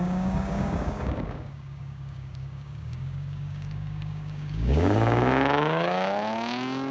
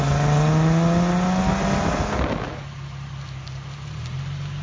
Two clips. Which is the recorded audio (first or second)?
second